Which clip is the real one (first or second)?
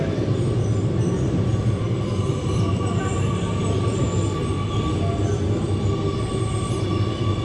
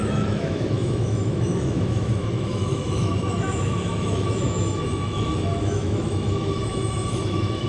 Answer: first